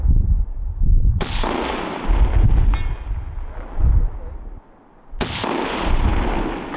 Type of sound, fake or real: real